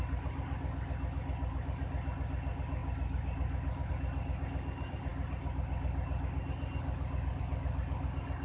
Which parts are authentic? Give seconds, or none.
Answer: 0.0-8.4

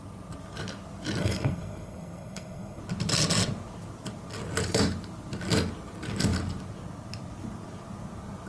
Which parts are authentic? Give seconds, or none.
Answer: 0.0-1.2; 2.8-8.5

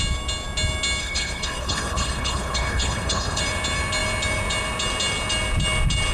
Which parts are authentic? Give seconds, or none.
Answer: 0.0-1.0; 3.4-6.1

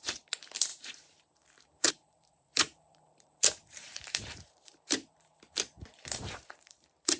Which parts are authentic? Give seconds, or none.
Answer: none

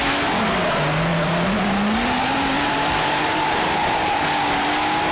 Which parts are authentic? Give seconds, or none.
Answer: 0.0-1.1; 4.2-5.1

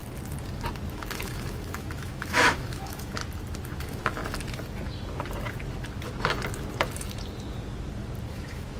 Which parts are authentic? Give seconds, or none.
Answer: 0.0-0.9; 3.2-3.8; 4.2-8.3

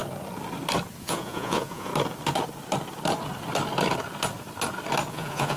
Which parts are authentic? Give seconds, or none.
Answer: 0.0-1.0; 1.9-5.1

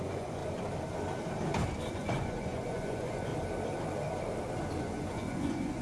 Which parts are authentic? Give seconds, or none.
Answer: 0.4-1.9; 3.3-4.8